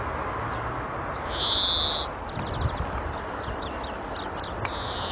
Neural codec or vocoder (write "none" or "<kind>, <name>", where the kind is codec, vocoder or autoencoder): none